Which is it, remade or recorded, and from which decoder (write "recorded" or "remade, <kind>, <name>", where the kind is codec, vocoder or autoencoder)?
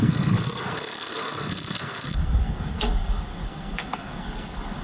remade, codec, SNAC